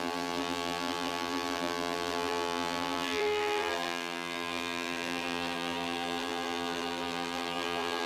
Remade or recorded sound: remade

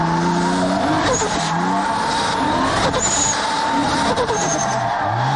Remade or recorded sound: recorded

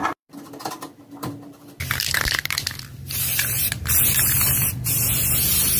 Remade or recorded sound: remade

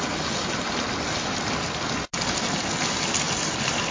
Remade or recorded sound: recorded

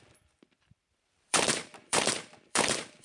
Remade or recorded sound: remade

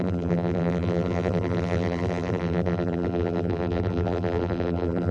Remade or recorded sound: remade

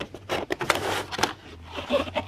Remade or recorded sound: recorded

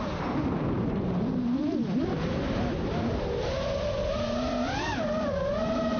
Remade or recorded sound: remade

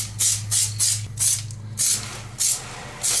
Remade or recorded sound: recorded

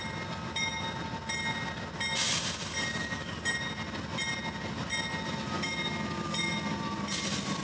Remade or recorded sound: recorded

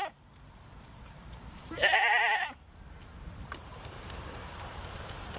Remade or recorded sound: remade